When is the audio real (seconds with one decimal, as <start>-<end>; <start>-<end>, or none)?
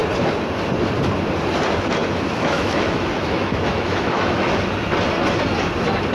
0.0-2.0; 4.6-6.1